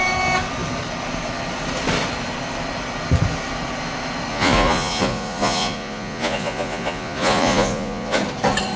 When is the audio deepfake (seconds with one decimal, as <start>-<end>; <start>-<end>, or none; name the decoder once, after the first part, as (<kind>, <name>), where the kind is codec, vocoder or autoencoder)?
4.3-8.2 (vocoder, Vocos)

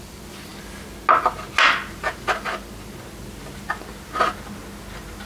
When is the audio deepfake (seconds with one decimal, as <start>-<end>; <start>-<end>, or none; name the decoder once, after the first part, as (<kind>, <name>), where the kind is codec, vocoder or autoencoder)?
none

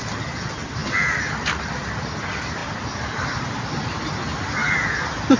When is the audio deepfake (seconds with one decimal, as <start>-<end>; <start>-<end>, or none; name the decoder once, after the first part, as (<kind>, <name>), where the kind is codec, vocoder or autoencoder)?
none

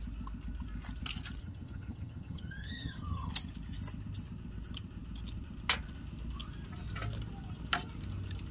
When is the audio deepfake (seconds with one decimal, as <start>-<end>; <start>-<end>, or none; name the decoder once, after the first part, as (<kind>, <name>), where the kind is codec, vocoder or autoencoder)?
1.4-3.3 (vocoder, HiFi-GAN)

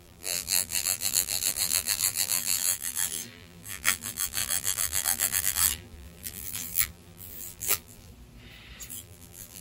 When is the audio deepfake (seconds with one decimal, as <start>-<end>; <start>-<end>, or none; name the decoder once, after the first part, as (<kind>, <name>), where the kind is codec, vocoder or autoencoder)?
0.0-8.1 (vocoder, BigVGAN v2); 8.9-9.6

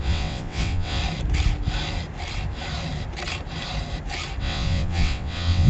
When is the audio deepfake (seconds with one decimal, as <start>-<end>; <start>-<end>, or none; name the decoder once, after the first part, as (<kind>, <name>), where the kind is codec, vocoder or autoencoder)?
0.0-1.0 (vocoder, WaveNeXt); 4.4-5.7

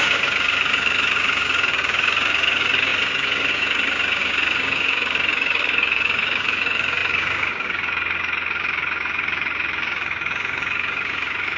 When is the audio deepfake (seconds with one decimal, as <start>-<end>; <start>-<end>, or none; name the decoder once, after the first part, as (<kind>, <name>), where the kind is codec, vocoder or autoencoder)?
0.0-11.6 (codec, DAC)

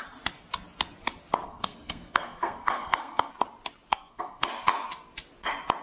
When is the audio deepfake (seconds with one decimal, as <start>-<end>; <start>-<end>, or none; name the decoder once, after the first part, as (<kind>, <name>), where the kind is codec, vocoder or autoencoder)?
1.4-3.3 (codec, SNAC); 3.9-4.5